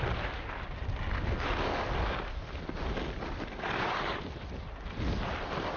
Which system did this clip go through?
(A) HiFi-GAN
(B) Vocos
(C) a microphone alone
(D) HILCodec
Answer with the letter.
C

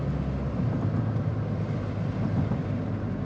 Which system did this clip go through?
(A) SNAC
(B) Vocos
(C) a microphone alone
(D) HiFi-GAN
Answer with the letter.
C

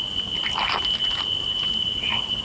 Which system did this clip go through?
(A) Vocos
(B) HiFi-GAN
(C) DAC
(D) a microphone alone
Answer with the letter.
D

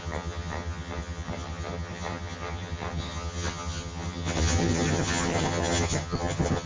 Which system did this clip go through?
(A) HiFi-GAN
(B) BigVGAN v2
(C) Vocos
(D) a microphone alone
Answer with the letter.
A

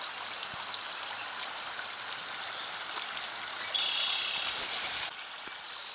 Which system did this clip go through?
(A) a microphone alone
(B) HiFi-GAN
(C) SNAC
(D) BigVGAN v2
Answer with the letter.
A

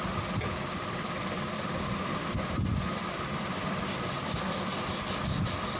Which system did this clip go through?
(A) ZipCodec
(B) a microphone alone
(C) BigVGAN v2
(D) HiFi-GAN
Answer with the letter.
B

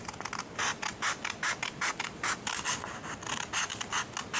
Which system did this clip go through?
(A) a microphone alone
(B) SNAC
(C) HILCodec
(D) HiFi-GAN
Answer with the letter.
A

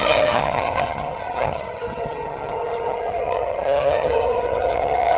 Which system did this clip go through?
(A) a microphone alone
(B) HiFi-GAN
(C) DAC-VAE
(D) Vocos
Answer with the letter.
B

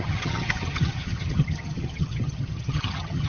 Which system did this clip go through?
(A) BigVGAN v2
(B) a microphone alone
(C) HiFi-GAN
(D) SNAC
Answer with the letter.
C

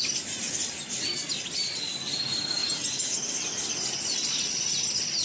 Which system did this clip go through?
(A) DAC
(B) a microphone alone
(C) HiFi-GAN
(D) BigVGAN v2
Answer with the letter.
B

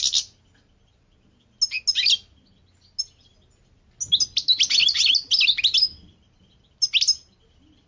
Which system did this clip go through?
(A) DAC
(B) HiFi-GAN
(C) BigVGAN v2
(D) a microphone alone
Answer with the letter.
D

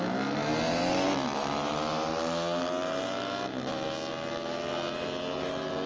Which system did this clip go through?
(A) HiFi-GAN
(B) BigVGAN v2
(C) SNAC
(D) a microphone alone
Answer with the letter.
D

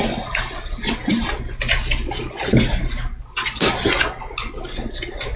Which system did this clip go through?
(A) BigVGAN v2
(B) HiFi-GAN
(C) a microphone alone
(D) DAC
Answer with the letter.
C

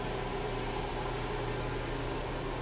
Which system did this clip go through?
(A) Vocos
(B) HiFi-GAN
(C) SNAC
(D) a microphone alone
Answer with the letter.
D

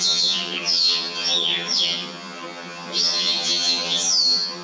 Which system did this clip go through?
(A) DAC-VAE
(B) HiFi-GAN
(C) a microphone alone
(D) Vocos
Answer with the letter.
B